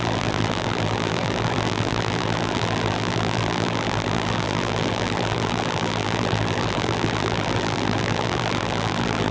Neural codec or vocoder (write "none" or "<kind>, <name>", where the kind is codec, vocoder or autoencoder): vocoder, BigVGAN v2